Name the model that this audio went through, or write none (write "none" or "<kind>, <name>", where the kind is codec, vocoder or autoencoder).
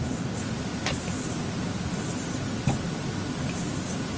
none